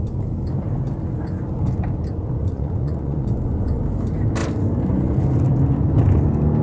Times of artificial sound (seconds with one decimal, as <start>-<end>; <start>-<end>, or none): 2.4-3.8

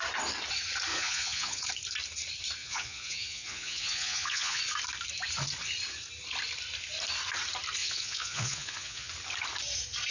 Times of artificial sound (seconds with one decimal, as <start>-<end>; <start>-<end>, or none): 0.9-1.7; 2.6-4.6; 7.8-9.1

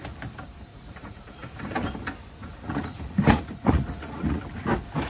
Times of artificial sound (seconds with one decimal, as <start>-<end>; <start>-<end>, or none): 0.7-1.5; 2.4-4.4

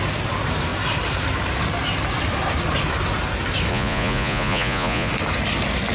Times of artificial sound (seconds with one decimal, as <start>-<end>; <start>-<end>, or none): 3.7-5.1

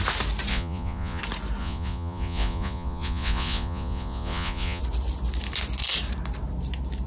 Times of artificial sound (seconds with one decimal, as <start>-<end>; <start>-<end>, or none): 0.5-1.2; 1.6-4.8

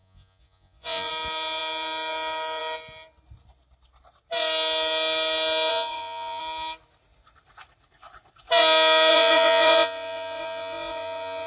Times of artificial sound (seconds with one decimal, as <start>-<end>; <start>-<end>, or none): 0.0-1.1; 5.7-6.4; 9.1-11.5

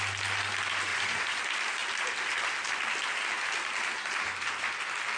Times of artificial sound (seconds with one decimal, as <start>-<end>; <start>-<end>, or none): 0.9-1.4